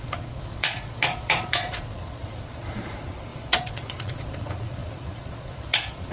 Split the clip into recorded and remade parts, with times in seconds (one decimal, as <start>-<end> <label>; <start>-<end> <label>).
0.0-6.1 remade